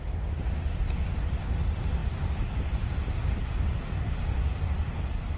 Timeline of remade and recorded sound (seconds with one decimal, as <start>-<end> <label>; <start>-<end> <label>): 0.0-2.0 recorded; 2.0-5.4 remade